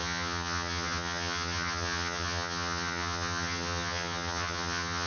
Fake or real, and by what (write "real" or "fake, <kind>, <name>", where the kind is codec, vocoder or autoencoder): fake, vocoder, HiFi-GAN